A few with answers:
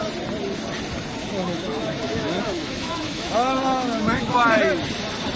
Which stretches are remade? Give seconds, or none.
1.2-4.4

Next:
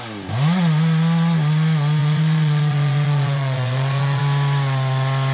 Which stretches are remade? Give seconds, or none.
2.0-4.2

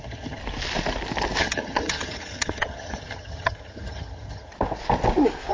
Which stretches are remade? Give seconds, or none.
0.0-0.4; 1.4-4.5

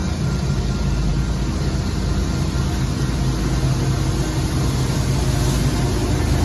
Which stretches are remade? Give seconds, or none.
0.0-0.6

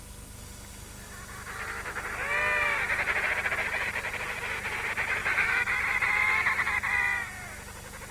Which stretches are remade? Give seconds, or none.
none